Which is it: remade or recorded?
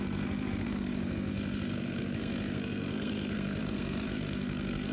remade